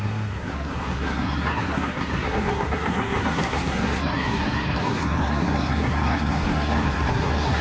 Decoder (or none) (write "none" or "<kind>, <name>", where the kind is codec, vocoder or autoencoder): codec, SNAC